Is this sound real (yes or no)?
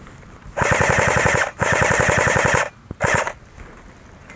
yes